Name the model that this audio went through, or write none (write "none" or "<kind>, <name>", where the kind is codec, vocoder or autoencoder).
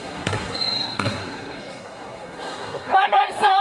codec, SNAC